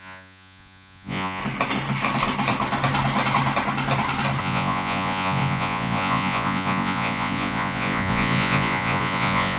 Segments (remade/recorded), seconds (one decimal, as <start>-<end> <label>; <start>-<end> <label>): 0.0-1.4 remade; 1.4-4.4 recorded; 4.4-9.6 remade